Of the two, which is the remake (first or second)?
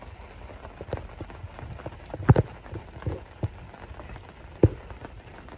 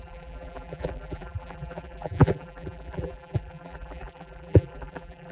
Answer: second